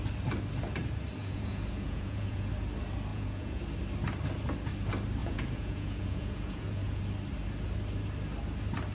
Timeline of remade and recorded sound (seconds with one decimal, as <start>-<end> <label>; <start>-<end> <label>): 0.0-1.2 recorded; 1.2-2.5 remade; 2.5-3.1 recorded; 3.1-3.6 remade; 3.6-5.2 recorded; 5.2-7.0 remade; 7.0-8.9 recorded